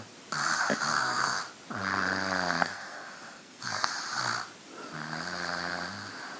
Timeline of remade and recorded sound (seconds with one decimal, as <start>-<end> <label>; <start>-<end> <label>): 0.0-0.9 recorded; 0.9-1.4 remade; 1.4-2.6 recorded; 2.6-3.9 remade; 3.9-6.4 recorded